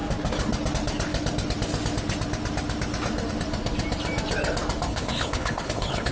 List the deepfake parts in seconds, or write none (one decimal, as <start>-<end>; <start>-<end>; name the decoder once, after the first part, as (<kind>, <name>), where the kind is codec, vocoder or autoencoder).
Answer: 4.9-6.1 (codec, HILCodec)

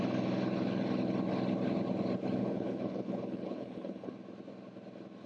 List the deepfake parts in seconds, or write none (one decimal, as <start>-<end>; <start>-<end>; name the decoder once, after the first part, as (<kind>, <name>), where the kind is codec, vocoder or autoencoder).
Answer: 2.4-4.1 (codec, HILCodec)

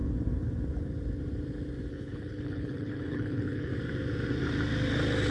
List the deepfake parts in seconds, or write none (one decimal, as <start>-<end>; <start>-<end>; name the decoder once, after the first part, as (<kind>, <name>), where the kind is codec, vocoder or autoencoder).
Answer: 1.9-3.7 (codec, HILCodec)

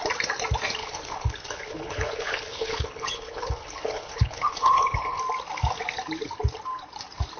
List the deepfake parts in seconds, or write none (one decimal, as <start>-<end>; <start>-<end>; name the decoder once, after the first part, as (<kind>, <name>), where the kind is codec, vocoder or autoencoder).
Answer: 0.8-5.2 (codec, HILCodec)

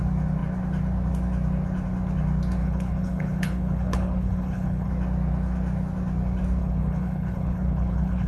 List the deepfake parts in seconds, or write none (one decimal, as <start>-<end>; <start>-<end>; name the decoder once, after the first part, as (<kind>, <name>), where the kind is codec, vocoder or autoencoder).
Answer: 2.6-4.9 (codec, HILCodec); 6.6-8.3

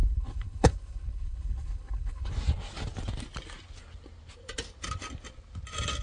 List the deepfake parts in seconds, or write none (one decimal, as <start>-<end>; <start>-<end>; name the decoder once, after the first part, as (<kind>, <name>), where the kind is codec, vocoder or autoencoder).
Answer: 0.0-2.3 (codec, HILCodec)